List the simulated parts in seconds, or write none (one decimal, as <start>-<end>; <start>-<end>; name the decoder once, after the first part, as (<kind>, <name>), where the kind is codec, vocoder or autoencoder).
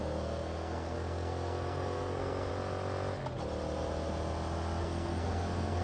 0.0-2.5 (codec, SNAC); 4.8-5.8